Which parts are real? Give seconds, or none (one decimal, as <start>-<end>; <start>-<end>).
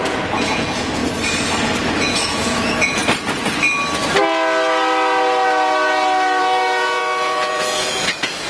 1.0-2.0; 3.0-6.4